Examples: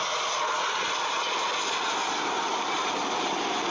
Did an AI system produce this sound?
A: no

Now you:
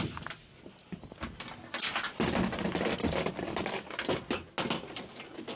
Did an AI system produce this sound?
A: no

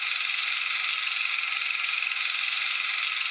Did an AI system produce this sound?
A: no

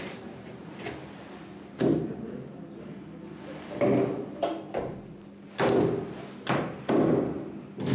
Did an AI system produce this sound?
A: no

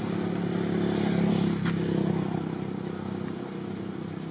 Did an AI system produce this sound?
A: no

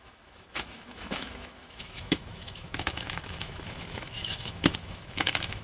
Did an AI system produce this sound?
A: yes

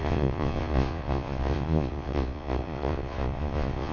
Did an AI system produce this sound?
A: yes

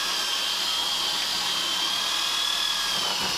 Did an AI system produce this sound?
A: no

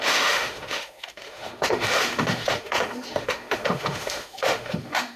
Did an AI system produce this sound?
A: yes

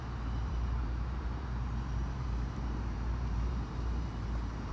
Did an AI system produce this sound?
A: yes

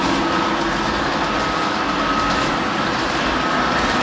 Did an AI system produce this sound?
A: no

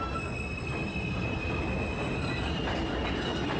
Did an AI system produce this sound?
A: no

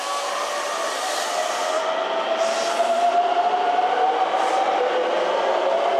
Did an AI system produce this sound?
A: yes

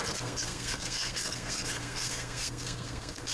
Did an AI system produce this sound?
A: yes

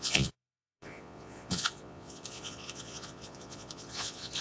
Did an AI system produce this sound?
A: yes